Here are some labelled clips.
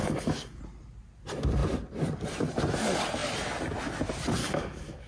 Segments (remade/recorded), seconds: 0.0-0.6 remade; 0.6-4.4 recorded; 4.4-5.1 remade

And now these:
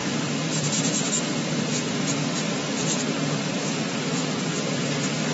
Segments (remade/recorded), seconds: 0.0-2.6 remade; 2.6-4.5 recorded; 4.5-5.3 remade

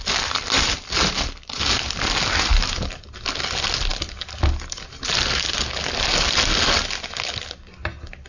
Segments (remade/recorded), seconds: 0.0-8.3 recorded

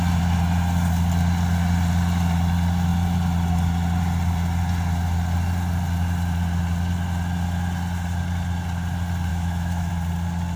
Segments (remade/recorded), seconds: 0.0-9.3 recorded; 9.3-9.9 remade; 9.9-10.6 recorded

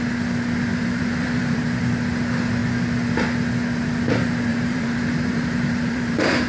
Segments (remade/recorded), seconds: 0.0-0.7 recorded; 0.7-1.8 remade; 1.8-4.5 recorded; 4.5-6.5 remade

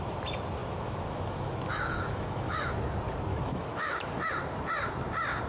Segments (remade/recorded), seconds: 0.0-0.6 recorded; 0.6-2.7 remade; 2.7-3.3 recorded; 3.3-4.3 remade; 4.3-5.5 recorded